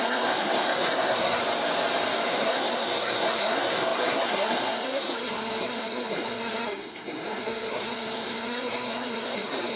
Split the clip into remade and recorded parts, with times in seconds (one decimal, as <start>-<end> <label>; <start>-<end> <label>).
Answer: 0.0-1.4 remade; 1.4-2.3 recorded; 2.3-9.8 remade